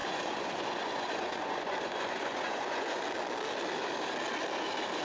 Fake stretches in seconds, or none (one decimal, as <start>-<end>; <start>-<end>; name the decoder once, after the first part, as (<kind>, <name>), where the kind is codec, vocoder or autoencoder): 0.0-3.0 (vocoder, Vocos)